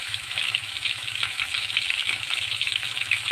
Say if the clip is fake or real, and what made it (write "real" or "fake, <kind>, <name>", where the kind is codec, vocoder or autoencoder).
fake, autoencoder, DAC-VAE